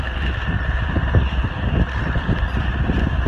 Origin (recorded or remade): recorded